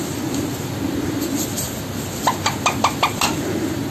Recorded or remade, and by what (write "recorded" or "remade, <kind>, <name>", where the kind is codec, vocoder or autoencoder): recorded